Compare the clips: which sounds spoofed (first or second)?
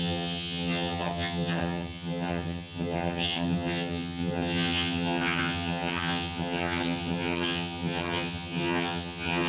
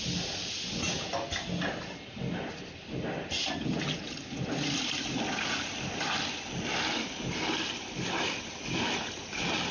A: first